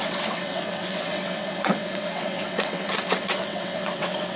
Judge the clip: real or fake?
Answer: fake